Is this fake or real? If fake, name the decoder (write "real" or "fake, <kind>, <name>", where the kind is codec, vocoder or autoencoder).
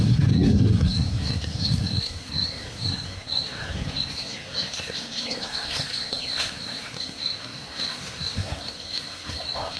fake, codec, SNAC